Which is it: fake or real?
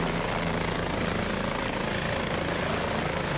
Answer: real